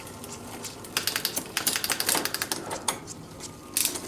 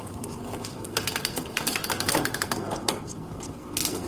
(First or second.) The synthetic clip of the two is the second